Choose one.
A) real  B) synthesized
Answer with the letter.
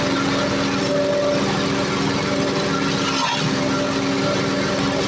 A